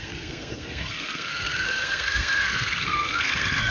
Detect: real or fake fake